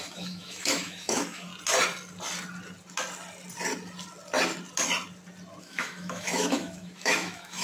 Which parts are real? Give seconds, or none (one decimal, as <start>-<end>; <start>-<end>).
1.5-5.6